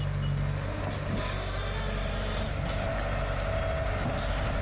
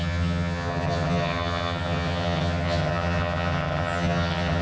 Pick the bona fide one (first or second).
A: first